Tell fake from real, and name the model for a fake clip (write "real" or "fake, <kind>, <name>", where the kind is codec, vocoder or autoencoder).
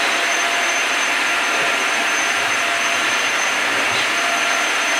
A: fake, vocoder, BigVGAN v2